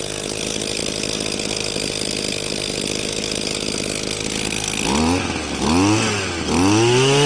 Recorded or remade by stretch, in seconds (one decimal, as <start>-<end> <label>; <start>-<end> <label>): 0.0-7.3 recorded